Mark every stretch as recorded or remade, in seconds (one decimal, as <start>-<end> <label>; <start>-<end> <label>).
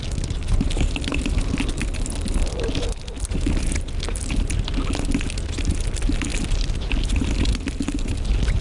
0.0-8.6 recorded